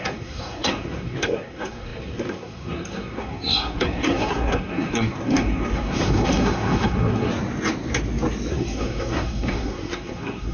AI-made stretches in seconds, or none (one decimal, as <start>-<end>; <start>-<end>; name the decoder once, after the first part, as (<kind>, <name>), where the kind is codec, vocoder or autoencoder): 0.0-7.3 (codec, SNAC); 8.5-10.5

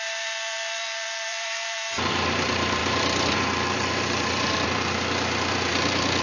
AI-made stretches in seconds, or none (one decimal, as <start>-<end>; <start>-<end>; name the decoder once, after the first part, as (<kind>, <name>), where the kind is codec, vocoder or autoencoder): 0.0-6.2 (vocoder, BigVGAN v2)

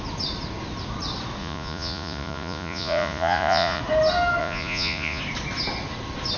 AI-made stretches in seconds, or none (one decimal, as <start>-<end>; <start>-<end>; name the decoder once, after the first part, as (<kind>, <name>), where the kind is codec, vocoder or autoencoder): 1.4-3.8 (vocoder, Vocos); 4.4-5.2